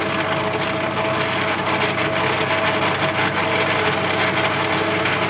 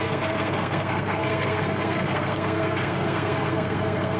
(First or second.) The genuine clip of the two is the first